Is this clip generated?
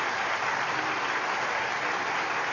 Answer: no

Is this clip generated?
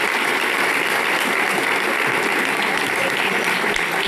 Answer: no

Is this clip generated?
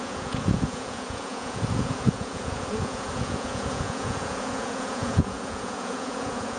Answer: yes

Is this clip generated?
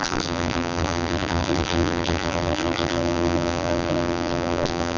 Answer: yes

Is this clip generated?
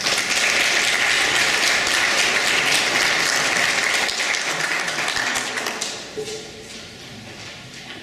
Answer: no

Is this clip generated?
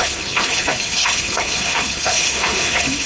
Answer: yes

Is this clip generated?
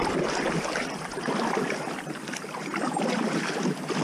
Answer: no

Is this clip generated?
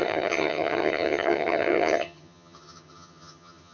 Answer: yes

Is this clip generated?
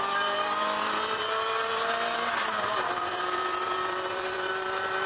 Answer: yes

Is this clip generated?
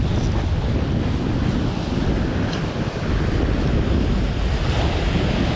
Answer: no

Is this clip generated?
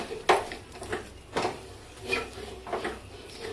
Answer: no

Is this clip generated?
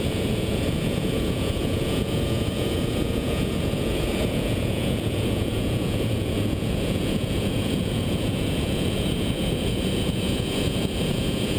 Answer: yes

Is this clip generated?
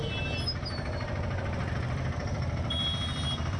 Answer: no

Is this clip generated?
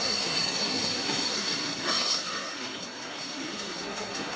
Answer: yes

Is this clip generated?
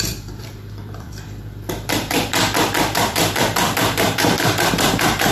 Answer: yes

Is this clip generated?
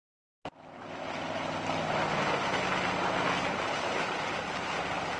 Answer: no